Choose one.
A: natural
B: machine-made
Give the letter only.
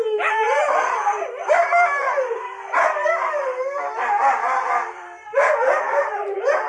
B